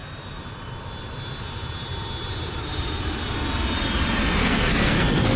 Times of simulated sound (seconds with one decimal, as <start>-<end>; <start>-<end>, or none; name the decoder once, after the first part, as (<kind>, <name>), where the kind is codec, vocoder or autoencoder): 4.4-5.4 (codec, SNAC)

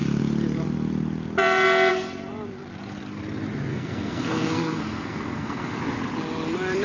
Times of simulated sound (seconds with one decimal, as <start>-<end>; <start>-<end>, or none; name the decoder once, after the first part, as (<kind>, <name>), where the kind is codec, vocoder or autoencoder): 3.7-5.8 (codec, SNAC)

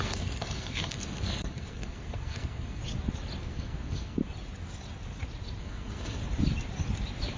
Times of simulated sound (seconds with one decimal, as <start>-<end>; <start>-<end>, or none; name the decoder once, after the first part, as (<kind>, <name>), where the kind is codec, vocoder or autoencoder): 0.0-2.8 (codec, SNAC); 3.4-4.2; 5.6-6.2

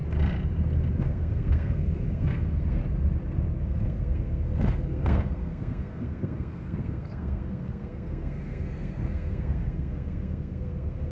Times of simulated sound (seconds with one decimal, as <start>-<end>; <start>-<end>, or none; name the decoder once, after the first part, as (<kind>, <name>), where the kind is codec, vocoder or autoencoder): 1.0-2.8 (codec, SNAC); 3.6-11.1

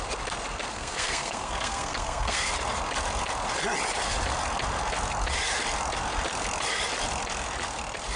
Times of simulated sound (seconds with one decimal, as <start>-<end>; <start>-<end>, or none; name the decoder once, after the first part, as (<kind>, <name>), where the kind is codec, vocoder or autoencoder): 0.7-2.5 (codec, SNAC)

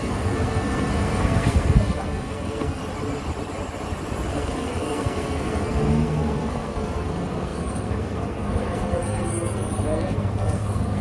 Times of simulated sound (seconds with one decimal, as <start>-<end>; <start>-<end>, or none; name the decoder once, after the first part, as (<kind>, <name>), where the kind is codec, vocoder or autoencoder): 0.0-2.8 (codec, SNAC); 4.3-11.0

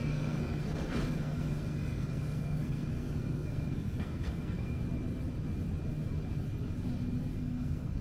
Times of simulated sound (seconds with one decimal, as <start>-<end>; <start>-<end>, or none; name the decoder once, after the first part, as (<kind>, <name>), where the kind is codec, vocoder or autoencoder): 0.0-4.8 (codec, SNAC); 7.3-8.0

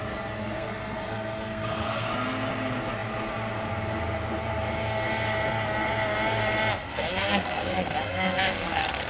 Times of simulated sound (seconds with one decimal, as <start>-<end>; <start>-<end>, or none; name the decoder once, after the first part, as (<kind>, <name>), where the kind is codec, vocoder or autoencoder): 0.4-2.1 (codec, SNAC); 6.8-9.1